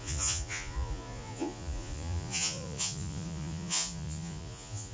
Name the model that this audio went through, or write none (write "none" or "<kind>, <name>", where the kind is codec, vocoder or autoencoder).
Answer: vocoder, Vocos